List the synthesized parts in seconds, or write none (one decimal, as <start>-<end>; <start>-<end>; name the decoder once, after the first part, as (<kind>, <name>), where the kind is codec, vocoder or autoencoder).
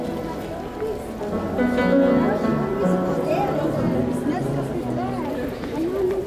2.5-4.7 (vocoder, BigVGAN v2)